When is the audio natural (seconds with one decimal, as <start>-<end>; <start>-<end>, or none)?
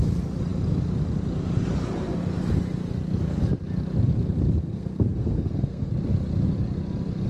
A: 0.0-4.6; 5.9-7.3